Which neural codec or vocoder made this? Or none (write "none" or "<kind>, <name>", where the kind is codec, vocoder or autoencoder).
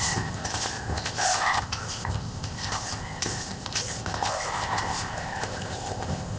codec, ZipCodec